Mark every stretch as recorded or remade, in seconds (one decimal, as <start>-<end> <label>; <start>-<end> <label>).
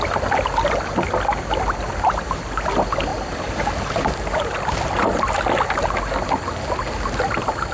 0.0-7.7 recorded